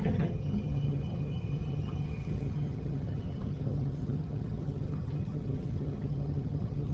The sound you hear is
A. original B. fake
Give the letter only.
B